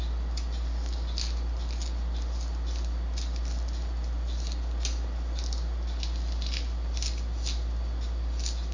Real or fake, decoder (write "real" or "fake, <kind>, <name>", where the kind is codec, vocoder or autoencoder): real